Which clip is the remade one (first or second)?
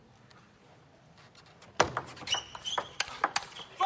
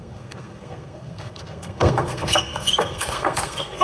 second